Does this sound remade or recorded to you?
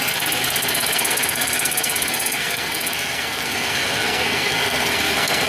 remade